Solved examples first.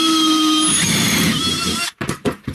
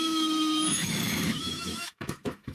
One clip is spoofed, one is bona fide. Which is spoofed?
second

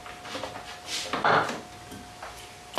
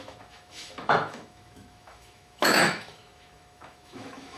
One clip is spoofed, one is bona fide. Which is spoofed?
second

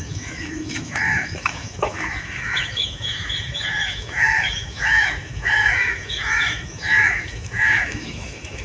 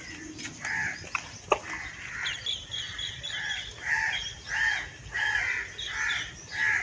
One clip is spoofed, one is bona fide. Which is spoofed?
first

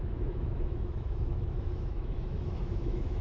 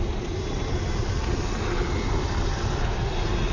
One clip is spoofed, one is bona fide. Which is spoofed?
first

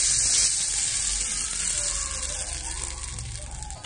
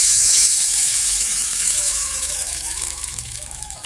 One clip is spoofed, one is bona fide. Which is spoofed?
second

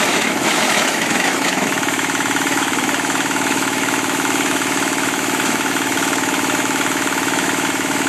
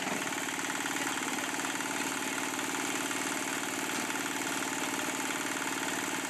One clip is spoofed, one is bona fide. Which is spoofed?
first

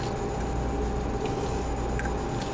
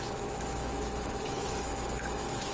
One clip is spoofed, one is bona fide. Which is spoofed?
second